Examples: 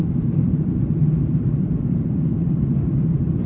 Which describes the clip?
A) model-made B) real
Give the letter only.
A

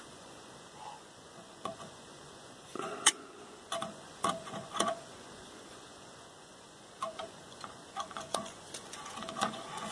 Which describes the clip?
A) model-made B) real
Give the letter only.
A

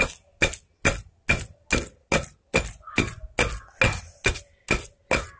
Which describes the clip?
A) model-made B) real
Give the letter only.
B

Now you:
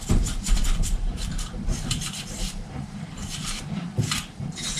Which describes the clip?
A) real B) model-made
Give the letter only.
B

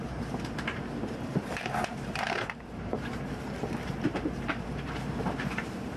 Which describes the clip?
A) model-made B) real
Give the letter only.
A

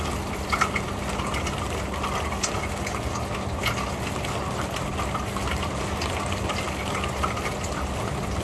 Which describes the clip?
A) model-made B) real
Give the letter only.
B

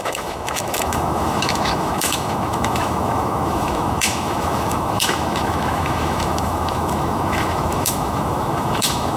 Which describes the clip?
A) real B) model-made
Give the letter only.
B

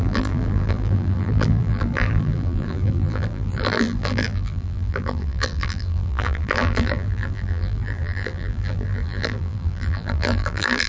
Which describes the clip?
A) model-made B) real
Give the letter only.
A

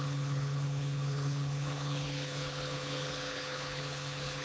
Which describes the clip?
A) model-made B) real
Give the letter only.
A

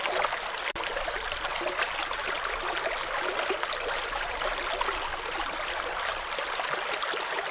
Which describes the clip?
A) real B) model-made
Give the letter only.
A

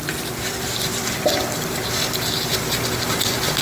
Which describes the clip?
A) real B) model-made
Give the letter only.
B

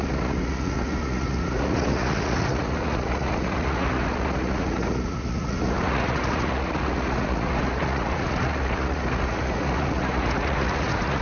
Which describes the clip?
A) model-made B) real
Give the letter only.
A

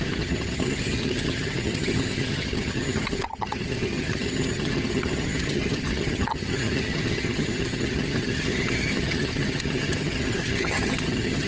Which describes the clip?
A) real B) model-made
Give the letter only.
B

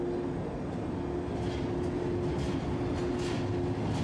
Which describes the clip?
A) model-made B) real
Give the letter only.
B